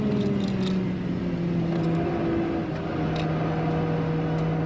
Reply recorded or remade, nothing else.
recorded